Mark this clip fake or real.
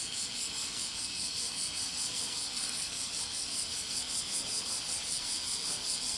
fake